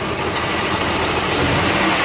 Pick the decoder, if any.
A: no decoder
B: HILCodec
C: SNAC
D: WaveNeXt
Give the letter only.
A